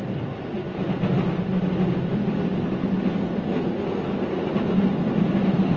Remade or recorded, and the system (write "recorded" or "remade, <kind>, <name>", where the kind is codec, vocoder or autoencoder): recorded